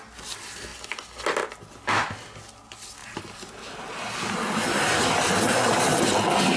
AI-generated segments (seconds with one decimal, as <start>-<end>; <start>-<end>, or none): none